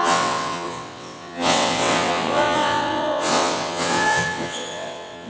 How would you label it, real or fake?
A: fake